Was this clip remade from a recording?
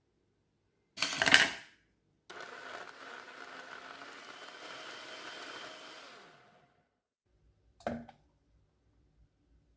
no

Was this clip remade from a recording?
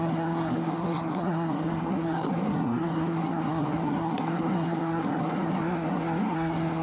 yes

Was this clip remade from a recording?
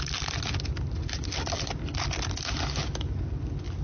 no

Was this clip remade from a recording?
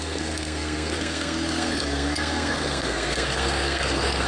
yes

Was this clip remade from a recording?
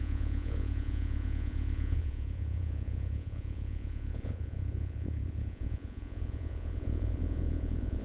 yes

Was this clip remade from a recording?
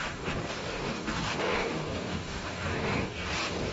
yes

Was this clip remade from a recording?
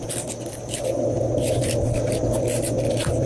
no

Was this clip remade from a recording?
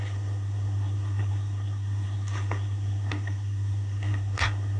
yes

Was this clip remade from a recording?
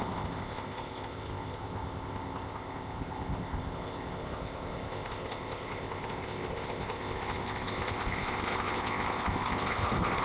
yes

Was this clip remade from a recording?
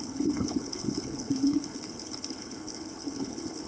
yes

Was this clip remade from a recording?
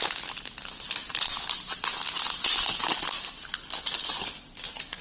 no